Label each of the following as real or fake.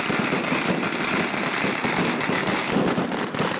real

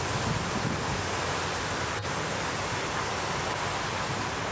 real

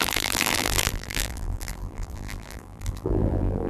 fake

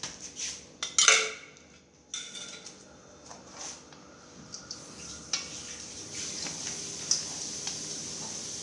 real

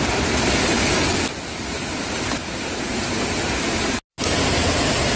real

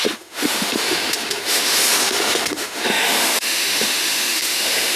fake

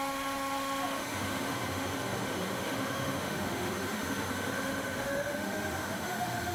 fake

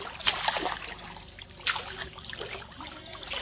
real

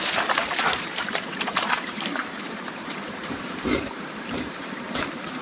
fake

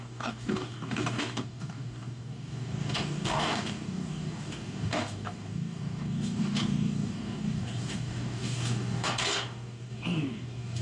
fake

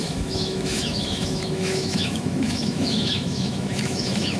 fake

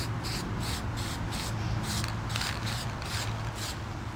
real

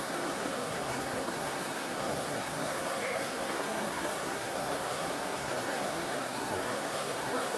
fake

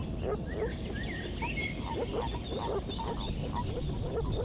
real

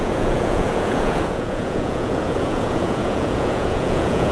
fake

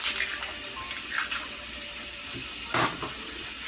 real